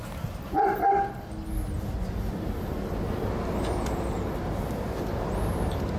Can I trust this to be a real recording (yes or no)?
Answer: yes